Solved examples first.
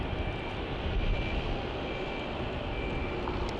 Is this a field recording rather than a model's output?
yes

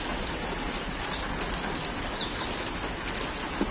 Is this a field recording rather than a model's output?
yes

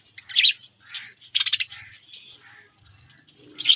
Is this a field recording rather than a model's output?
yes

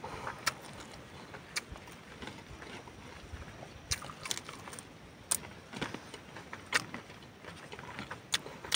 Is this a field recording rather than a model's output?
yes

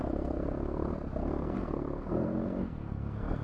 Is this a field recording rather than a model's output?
no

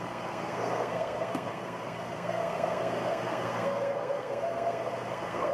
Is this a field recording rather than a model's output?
no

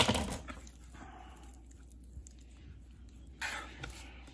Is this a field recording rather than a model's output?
yes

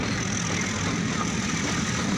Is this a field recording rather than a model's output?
no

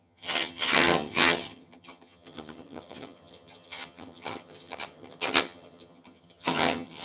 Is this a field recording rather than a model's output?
no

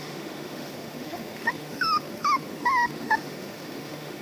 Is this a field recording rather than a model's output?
no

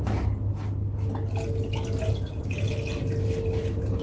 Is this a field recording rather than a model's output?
yes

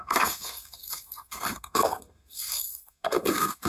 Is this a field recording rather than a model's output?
no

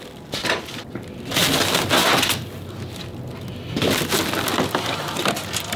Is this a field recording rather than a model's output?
yes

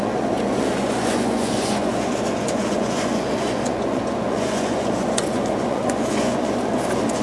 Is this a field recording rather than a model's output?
no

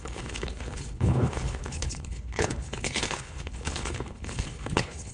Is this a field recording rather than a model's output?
no